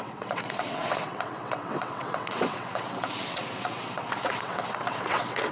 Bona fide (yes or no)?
no